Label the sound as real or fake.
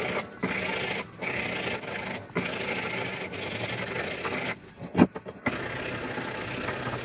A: real